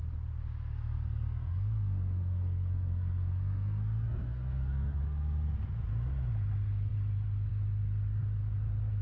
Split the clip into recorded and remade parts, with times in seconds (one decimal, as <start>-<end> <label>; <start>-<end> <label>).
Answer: 0.0-0.7 recorded; 0.7-5.0 remade; 5.0-9.0 recorded